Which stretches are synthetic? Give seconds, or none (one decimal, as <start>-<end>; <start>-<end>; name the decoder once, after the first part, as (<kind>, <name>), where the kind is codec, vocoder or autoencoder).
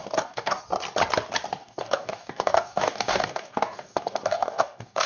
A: 0.0-0.6 (codec, DAC); 1.6-5.1